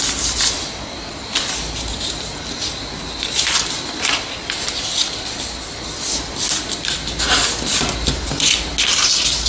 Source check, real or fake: real